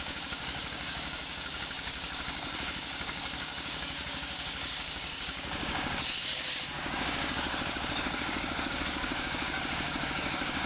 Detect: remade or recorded remade